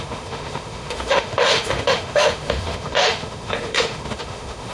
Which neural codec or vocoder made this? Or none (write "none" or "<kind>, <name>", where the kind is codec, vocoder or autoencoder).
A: autoencoder, DAC-VAE